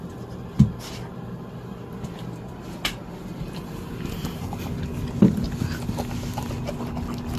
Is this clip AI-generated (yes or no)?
no